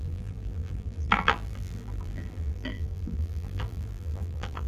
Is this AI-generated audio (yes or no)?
yes